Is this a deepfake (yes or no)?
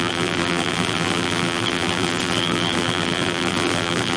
yes